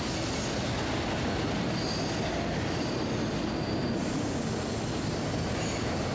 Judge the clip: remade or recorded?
recorded